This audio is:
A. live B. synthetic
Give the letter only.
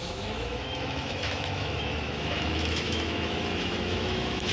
B